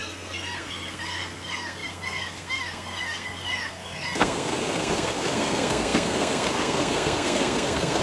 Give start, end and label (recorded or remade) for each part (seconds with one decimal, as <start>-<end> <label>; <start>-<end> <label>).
0.0-8.0 remade